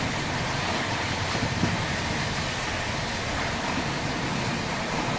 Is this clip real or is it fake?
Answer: real